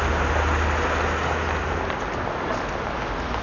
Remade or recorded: recorded